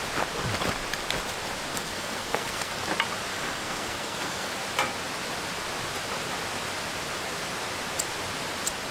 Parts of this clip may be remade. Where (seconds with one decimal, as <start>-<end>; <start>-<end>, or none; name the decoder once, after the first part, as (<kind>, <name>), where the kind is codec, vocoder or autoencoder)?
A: 1.7-2.8 (codec, SNAC); 3.3-4.5